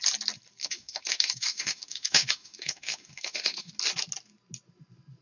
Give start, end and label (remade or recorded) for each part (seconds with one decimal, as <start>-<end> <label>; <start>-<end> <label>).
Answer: 0.0-0.6 recorded; 0.6-3.7 remade; 3.7-5.2 recorded